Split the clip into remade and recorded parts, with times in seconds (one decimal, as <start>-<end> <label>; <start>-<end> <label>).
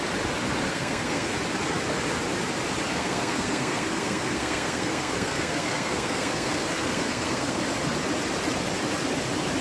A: 0.0-0.7 recorded; 0.7-1.4 remade; 1.4-2.9 recorded; 2.9-7.6 remade; 7.6-9.6 recorded